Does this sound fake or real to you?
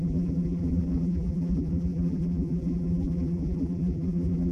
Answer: fake